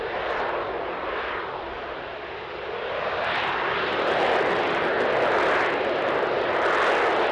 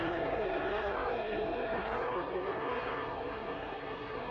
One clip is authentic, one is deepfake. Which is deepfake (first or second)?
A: second